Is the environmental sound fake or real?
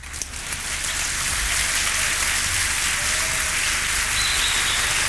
real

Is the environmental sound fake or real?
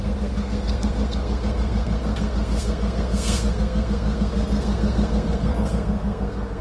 fake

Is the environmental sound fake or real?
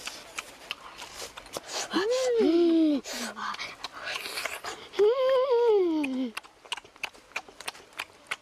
real